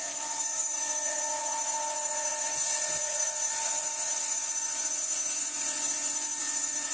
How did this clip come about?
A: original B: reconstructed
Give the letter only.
B